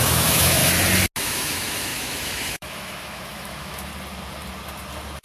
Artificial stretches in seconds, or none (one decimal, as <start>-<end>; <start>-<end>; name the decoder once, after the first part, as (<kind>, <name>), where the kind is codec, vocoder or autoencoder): 0.0-0.6 (autoencoder, DAC-VAE); 1.2-3.9